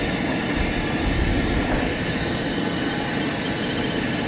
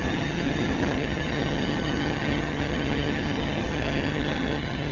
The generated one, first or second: second